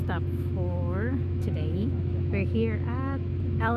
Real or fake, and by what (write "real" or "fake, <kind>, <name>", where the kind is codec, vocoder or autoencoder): fake, autoencoder, DAC-VAE